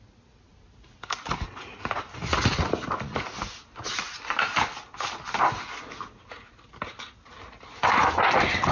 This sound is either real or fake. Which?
real